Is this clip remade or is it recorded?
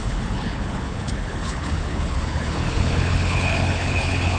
remade